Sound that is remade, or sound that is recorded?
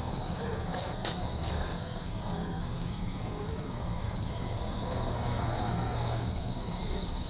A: remade